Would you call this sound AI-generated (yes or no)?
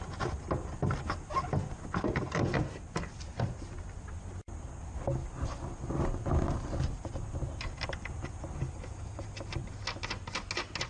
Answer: no